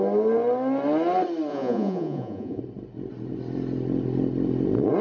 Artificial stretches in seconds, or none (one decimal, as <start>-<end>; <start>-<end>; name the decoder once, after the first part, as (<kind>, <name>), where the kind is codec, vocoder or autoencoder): 1.5-2.6 (vocoder, Vocos)